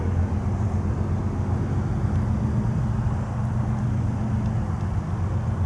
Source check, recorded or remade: recorded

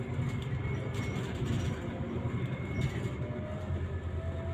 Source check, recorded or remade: recorded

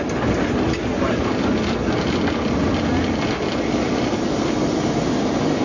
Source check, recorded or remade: recorded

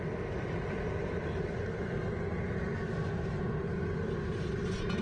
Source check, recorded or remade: recorded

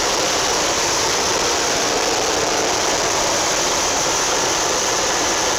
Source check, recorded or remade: recorded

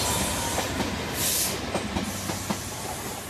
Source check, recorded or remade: recorded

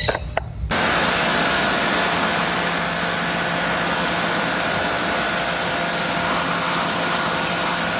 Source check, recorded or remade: recorded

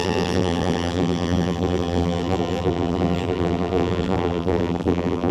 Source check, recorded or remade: remade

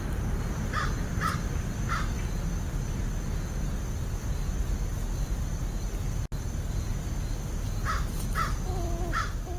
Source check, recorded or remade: recorded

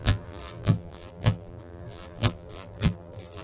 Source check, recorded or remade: remade